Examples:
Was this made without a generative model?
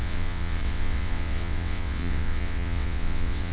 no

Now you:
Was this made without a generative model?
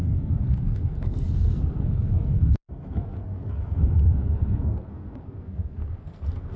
no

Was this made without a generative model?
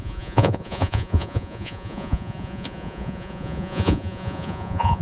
no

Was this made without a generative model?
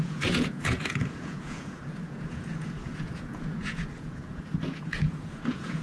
no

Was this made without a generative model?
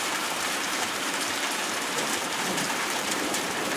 no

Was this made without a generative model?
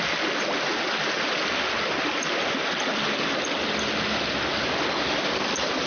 yes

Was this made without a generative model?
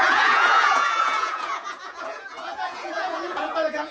no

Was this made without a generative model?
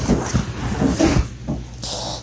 yes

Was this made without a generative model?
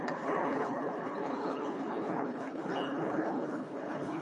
no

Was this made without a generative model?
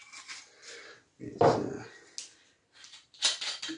yes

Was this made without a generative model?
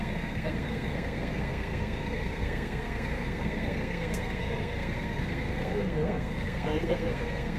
no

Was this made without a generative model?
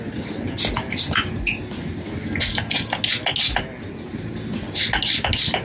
yes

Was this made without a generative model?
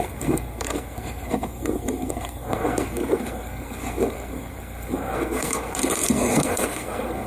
no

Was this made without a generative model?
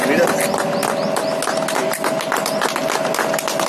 yes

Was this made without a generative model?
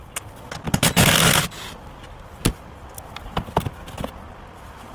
yes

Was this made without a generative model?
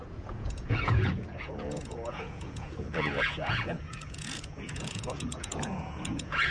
no